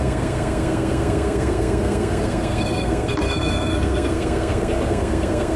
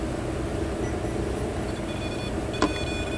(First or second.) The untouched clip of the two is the second